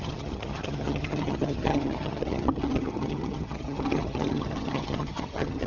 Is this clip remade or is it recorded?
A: remade